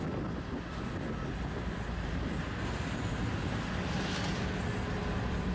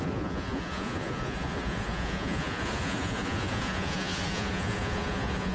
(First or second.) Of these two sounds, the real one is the first